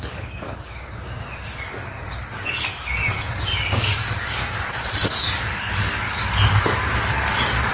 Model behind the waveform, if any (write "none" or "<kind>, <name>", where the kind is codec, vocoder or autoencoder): codec, DAC